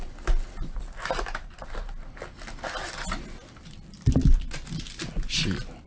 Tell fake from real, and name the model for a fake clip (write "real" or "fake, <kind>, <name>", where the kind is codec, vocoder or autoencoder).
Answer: real